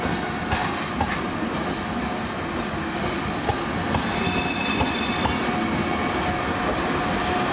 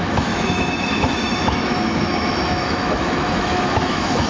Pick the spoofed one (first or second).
second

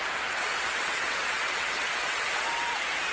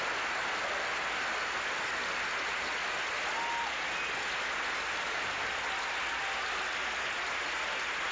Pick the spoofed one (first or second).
first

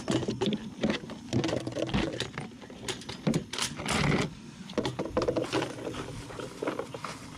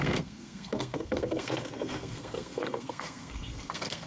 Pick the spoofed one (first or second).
second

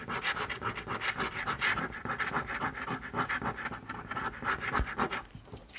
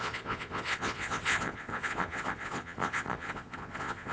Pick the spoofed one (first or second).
second